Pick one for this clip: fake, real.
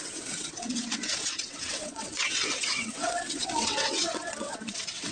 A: fake